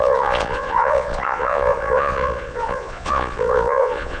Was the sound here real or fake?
fake